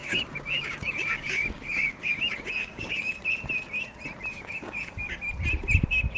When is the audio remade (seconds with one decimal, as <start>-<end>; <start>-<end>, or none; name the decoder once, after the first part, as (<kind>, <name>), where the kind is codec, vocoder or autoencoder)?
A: 0.0-3.2 (codec, DAC); 4.3-5.2